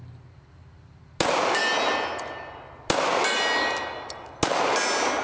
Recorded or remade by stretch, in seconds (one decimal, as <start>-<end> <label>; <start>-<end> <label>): 0.0-5.2 recorded